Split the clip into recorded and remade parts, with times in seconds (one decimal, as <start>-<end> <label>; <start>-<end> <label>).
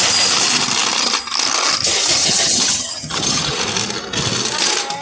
0.0-2.2 recorded; 2.2-3.6 remade; 3.6-5.0 recorded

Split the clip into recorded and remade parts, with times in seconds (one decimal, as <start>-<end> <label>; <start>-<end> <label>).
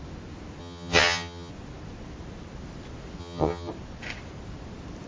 0.0-0.6 recorded; 0.6-1.5 remade; 1.5-3.2 recorded; 3.2-3.7 remade; 3.7-5.1 recorded